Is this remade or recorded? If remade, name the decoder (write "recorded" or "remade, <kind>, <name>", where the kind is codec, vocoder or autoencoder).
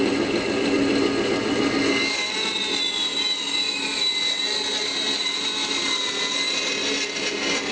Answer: recorded